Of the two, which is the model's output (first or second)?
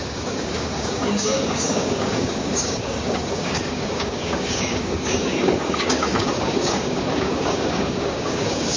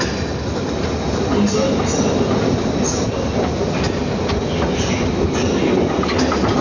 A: first